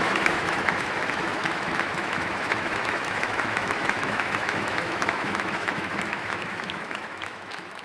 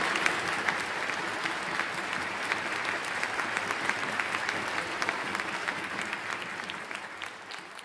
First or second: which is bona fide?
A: second